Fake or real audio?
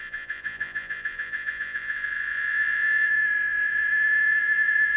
fake